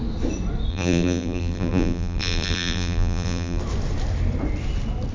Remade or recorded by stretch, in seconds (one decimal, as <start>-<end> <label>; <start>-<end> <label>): 0.0-0.7 recorded; 0.7-3.6 remade; 3.6-5.1 recorded